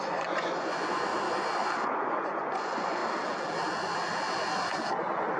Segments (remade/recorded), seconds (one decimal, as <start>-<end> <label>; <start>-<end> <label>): 0.0-1.1 remade; 1.1-1.9 recorded; 1.9-3.0 remade; 3.0-5.4 recorded